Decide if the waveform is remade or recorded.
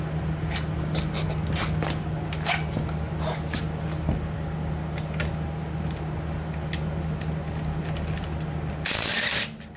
recorded